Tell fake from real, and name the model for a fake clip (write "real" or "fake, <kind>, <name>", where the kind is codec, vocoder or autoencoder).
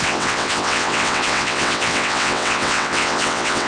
fake, vocoder, WaveNeXt